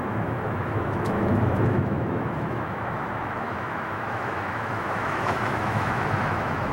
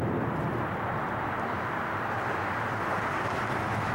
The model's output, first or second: first